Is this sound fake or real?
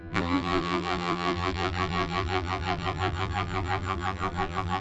fake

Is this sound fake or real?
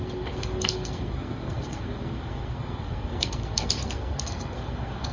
fake